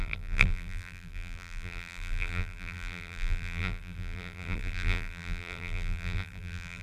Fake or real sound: fake